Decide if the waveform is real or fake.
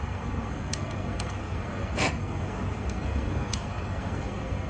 fake